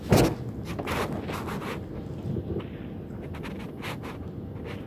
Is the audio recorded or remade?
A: recorded